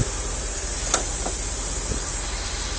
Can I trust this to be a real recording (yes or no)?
yes